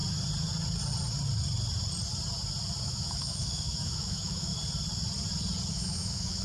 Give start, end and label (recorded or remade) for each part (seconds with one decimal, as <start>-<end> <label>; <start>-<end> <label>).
0.0-2.8 recorded; 2.8-4.5 remade; 4.5-5.7 recorded; 5.7-6.4 remade